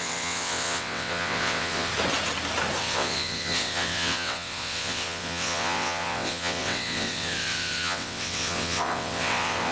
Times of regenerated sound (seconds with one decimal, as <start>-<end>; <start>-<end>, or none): 0.0-1.9; 2.8-9.7